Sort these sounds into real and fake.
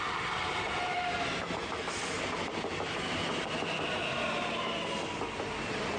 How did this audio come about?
real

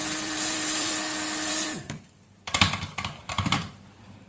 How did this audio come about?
fake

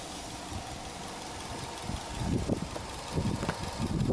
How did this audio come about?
real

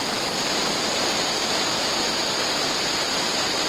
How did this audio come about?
fake